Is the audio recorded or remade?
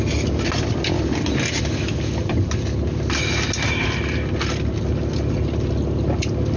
recorded